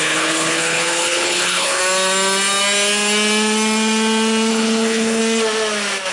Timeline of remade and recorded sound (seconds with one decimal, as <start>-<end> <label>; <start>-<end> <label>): 0.0-1.8 remade; 1.8-4.5 recorded; 4.5-5.2 remade; 5.2-6.1 recorded